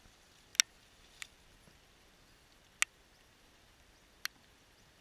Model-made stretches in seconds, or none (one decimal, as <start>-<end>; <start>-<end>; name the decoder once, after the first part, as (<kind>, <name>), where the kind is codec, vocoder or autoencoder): none